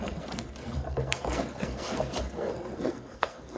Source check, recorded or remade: remade